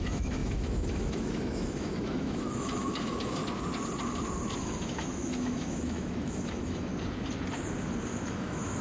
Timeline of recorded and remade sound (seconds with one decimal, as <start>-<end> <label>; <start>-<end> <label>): 0.0-3.4 remade; 3.4-4.6 recorded; 4.6-6.9 remade; 6.9-8.3 recorded; 8.3-8.8 remade